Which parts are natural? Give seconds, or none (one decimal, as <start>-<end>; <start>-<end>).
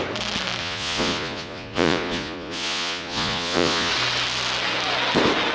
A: 0.0-0.6; 3.9-5.5